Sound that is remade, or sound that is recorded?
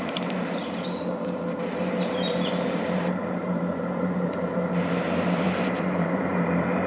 remade